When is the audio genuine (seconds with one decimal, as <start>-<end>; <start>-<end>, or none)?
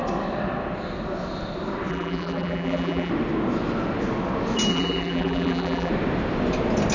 0.0-1.9; 3.1-4.7; 5.9-6.9